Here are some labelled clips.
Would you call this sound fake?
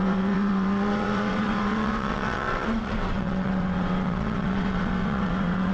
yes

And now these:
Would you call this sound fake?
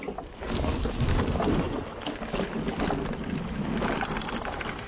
no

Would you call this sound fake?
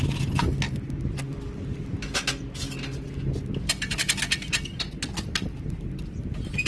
no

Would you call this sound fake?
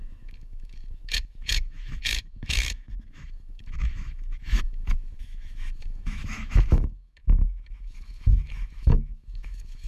yes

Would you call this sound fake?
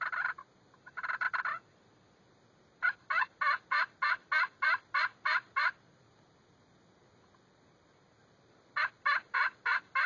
no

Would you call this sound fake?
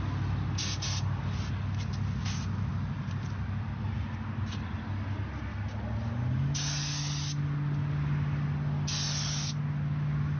no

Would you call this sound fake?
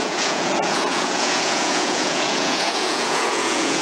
yes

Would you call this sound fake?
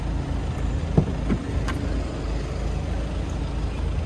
no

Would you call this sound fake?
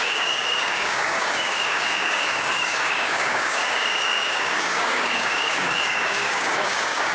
yes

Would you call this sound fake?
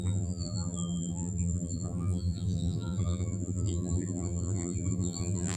yes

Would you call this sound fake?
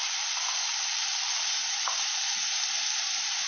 yes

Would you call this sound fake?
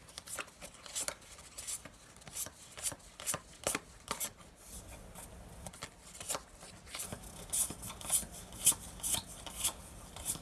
no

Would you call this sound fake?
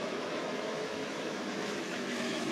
yes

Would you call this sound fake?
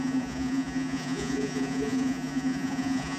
yes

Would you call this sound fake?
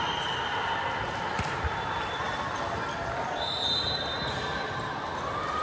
no